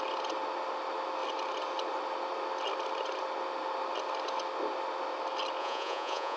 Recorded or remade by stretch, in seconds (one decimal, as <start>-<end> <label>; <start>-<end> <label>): 0.0-5.6 recorded; 5.6-6.4 remade